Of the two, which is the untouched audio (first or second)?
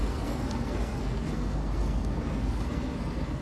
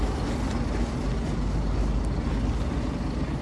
second